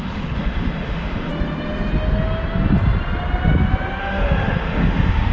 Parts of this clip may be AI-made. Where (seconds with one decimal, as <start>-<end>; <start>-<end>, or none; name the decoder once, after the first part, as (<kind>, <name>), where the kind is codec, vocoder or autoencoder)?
0.0-1.3 (autoencoder, DAC-VAE); 4.0-5.3